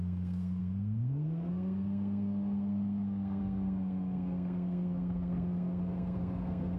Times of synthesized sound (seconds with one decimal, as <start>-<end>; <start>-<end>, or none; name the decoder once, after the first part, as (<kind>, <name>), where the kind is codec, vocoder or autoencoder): 0.0-6.8 (codec, SNAC)